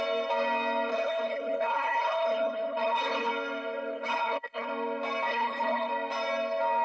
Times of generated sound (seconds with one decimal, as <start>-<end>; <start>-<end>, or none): 0.9-3.3; 3.9-4.7; 5.3-5.9